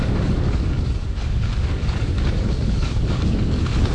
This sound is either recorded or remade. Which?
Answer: remade